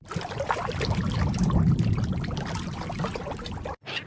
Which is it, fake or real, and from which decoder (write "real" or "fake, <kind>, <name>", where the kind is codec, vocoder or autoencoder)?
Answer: real